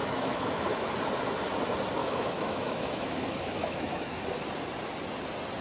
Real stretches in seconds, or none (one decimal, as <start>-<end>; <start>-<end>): 0.9-2.0; 4.2-5.6